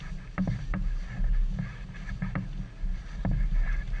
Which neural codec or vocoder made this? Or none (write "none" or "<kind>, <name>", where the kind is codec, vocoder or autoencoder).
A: none